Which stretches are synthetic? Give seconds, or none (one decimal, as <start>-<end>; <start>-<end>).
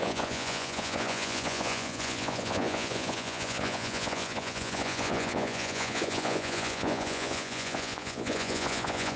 0.0-9.2